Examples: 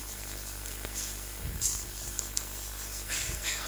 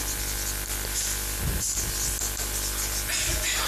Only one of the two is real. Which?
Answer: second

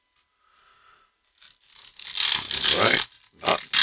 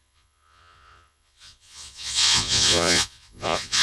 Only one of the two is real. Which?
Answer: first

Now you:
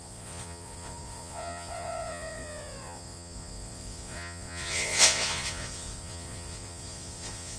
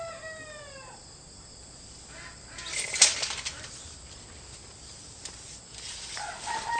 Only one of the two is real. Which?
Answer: second